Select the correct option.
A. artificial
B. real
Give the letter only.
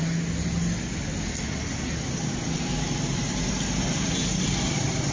B